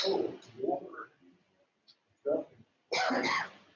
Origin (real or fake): real